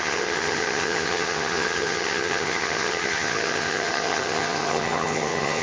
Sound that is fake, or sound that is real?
fake